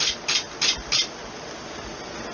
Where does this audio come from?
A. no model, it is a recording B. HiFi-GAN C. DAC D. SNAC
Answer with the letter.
A